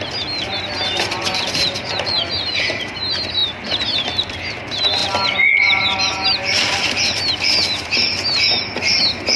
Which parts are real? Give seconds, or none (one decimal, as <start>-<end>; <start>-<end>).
0.0-9.4